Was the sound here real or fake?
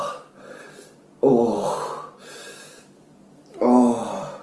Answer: real